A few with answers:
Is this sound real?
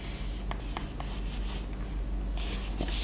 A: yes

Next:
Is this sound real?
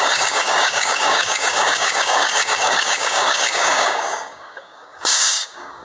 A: no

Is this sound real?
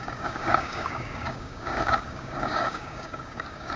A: no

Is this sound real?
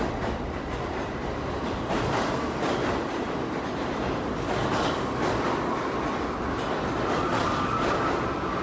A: yes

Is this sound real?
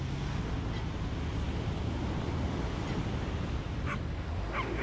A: yes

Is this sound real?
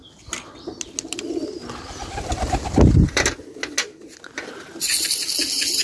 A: yes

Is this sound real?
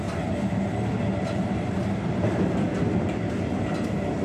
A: yes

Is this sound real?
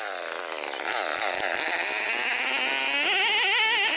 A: yes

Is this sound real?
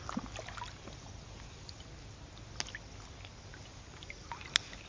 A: yes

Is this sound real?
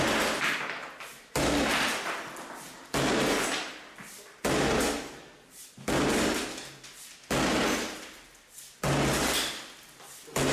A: yes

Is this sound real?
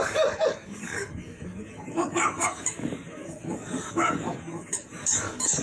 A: no